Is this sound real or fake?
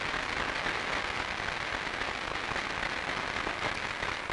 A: real